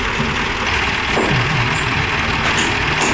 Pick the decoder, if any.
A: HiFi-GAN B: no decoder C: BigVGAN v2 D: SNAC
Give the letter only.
B